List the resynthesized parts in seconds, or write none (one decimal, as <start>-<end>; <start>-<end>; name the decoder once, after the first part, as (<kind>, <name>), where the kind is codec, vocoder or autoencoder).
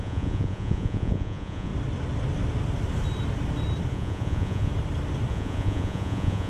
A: 0.0-1.7 (vocoder, Vocos); 3.9-4.7; 5.3-6.5